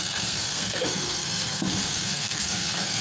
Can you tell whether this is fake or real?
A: fake